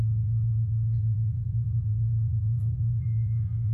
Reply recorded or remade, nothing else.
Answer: remade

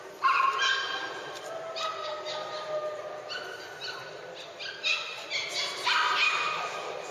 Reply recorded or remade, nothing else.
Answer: recorded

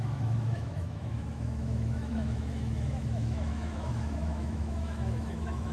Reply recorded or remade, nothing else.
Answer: remade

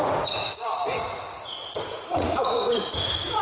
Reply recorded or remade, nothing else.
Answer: remade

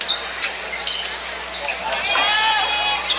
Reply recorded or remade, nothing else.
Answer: recorded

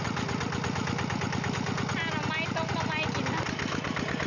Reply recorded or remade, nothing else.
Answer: recorded